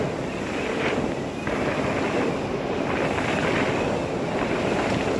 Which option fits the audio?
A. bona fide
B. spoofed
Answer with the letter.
A